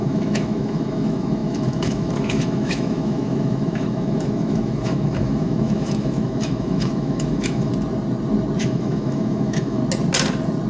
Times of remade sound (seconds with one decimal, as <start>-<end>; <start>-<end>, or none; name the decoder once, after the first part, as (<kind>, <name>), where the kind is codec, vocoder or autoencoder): 0.0-7.7 (autoencoder, DAC-VAE); 8.6-9.8